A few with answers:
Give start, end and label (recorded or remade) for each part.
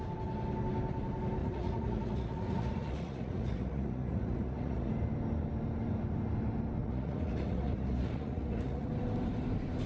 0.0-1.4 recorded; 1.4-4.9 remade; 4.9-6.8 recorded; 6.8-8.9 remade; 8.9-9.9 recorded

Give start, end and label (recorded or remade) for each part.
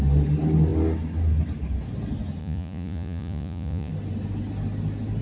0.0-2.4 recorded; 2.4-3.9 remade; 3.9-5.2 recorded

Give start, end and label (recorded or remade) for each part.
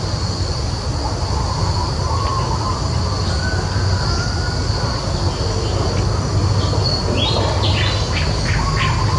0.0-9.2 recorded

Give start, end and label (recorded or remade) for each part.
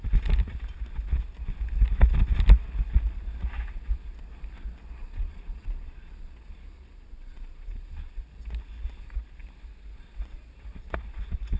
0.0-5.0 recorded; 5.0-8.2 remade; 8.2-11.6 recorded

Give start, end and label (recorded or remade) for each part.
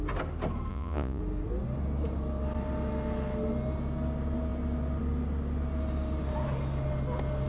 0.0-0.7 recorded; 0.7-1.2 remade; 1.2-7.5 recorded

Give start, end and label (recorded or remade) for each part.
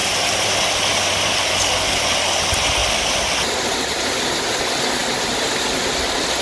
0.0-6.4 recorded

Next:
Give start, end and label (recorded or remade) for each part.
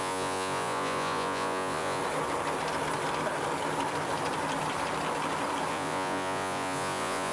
0.0-2.0 remade; 2.0-5.7 recorded; 5.7-7.3 remade